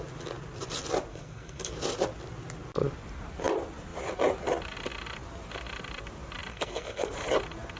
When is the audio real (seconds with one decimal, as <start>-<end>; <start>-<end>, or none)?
0.0-1.1; 1.7-6.5; 7.1-7.8